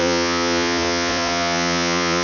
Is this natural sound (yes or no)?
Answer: no